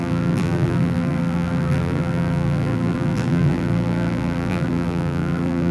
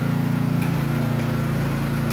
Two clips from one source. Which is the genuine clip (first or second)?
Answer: second